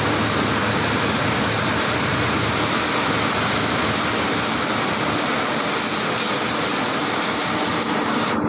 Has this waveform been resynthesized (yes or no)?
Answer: no